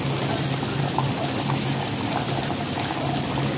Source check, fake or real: real